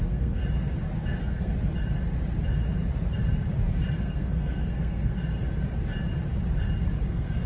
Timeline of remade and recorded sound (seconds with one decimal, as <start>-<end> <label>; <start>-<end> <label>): 0.0-0.4 remade; 0.4-1.1 recorded; 1.1-1.5 remade; 1.5-4.0 recorded; 4.0-5.2 remade; 5.2-7.1 recorded; 7.1-7.5 remade